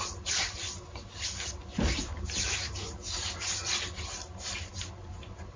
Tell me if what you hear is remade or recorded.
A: recorded